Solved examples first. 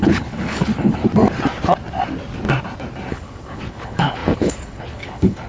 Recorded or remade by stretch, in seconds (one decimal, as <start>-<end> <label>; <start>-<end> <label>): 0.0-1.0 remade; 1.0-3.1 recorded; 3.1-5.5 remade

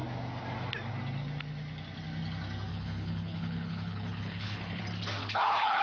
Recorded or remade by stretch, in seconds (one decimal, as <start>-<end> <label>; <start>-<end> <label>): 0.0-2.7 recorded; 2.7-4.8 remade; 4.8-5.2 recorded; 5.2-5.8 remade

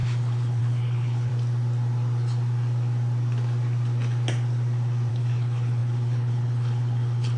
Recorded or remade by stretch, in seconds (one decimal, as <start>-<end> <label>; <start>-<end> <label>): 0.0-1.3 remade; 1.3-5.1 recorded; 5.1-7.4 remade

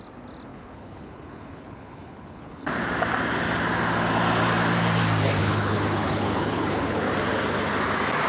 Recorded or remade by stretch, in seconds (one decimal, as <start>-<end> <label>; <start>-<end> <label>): 0.0-0.5 recorded; 0.5-2.7 remade; 2.7-5.4 recorded; 5.4-7.1 remade; 7.1-8.3 recorded

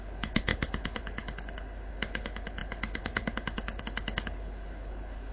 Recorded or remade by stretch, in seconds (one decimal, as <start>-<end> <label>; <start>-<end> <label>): 0.0-5.3 remade

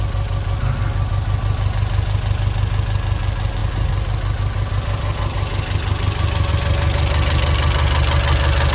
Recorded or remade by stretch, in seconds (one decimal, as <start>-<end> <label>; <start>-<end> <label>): 0.0-8.7 recorded

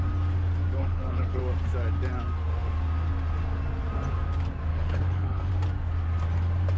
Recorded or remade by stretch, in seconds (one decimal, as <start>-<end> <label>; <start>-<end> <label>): 0.0-0.8 recorded; 0.8-1.4 remade; 1.4-4.7 recorded; 4.7-5.5 remade; 5.5-6.8 recorded

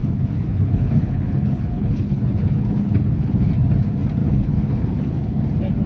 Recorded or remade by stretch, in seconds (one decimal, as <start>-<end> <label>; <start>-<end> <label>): 0.0-3.5 remade; 3.5-4.2 recorded; 4.2-5.4 remade; 5.4-5.9 recorded